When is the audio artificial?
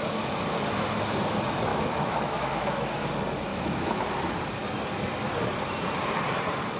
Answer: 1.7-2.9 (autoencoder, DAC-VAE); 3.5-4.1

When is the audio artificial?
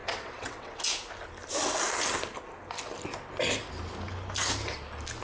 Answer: 0.0-0.8 (vocoder, WaveNeXt)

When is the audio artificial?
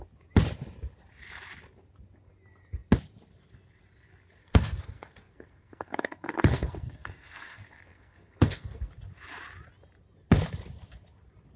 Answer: 4.4-8.9 (codec, SNAC)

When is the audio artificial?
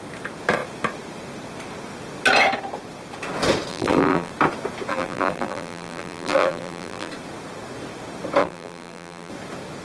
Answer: 3.7-4.3 (vocoder, BigVGAN v2); 4.9-7.1; 8.4-9.3